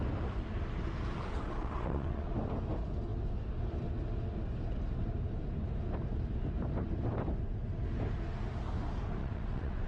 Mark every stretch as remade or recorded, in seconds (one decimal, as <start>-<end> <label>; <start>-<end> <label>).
0.0-1.3 recorded; 1.3-2.3 remade; 2.3-9.2 recorded; 9.2-9.9 remade